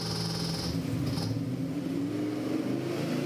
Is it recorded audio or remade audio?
recorded